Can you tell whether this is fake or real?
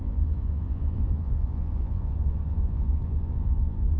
fake